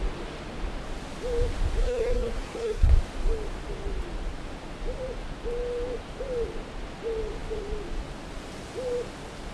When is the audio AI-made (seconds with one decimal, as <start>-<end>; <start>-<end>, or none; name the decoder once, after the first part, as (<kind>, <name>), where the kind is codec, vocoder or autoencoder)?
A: 1.8-2.9 (codec, SNAC)